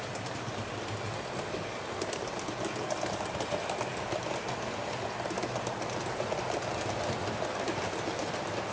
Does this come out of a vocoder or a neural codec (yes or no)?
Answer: no